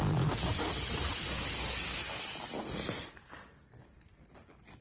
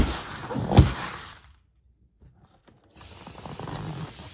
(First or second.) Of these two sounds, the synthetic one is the second